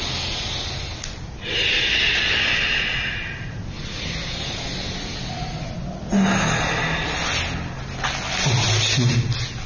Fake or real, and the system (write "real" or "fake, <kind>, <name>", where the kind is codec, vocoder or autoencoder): real